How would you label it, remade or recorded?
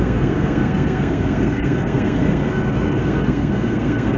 remade